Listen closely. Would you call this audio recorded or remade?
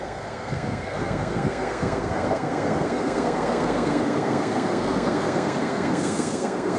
remade